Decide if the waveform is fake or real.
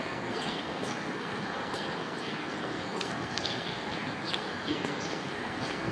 fake